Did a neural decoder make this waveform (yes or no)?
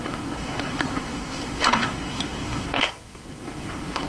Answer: yes